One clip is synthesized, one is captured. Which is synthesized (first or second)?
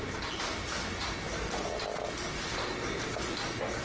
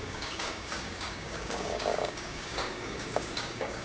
second